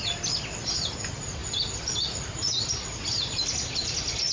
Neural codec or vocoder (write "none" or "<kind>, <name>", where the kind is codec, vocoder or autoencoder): none